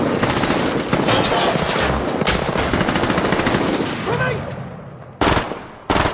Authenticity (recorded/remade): recorded